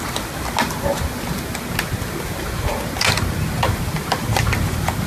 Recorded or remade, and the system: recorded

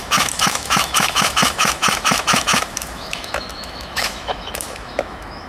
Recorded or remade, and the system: remade, autoencoder, DAC-VAE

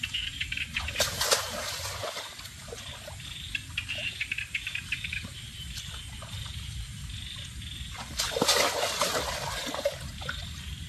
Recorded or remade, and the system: recorded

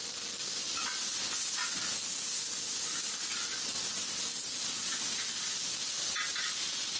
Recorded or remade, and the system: recorded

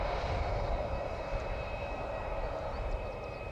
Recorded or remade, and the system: remade, vocoder, BigVGAN v2